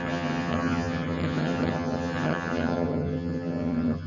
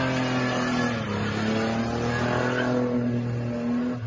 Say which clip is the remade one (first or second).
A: first